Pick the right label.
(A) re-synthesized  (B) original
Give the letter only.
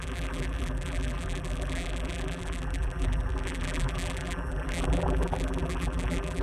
A